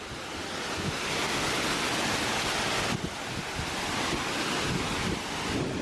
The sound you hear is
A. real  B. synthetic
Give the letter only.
A